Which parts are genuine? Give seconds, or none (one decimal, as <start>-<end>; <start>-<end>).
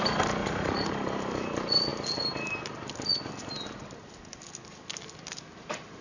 0.0-0.4; 0.9-6.0